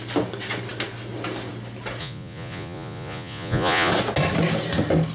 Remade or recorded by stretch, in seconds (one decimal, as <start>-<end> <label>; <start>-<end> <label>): 0.0-2.0 recorded; 2.0-3.9 remade; 3.9-5.1 recorded